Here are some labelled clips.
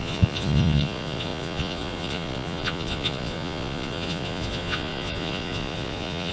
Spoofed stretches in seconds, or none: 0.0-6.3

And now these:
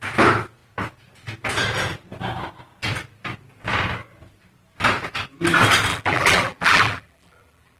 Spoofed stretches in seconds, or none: 5.9-7.8

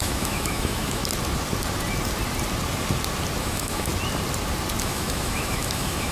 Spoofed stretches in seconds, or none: 0.0-1.0; 3.4-3.9; 4.8-6.1

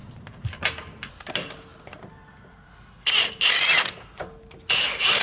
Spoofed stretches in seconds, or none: 0.0-0.6

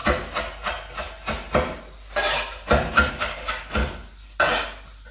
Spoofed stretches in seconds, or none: 3.1-3.8

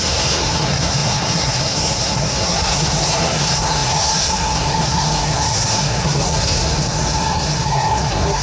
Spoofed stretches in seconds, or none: 0.0-8.4

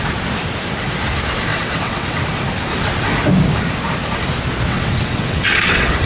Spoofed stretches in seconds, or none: 1.5-2.2; 4.7-6.1